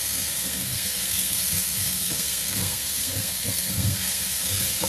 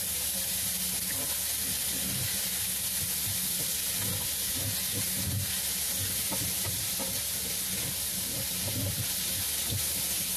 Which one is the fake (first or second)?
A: first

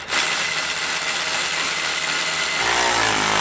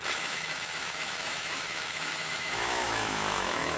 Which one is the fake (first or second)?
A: second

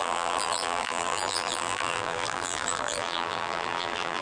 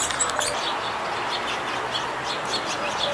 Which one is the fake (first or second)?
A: first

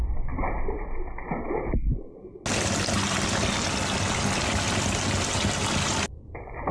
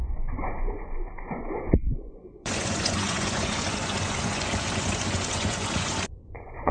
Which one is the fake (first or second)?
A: second